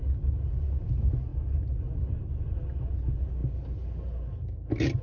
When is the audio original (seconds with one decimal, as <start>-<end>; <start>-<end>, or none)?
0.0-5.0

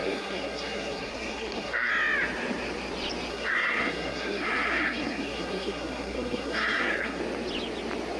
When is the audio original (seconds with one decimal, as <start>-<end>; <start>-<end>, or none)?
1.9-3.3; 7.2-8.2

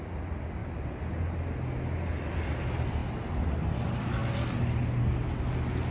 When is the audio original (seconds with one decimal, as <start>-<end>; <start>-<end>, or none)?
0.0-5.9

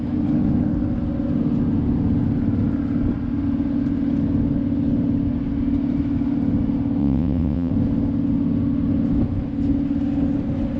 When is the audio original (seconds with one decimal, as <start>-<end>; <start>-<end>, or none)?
0.0-7.0; 7.7-10.8